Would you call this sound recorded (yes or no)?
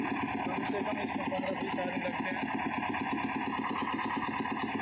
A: yes